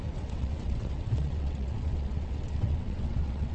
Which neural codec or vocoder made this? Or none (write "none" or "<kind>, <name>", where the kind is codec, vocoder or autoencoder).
vocoder, WaveNeXt